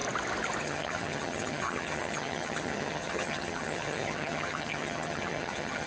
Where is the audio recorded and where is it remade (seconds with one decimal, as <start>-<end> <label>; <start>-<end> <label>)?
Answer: 0.0-0.6 recorded; 0.6-5.9 remade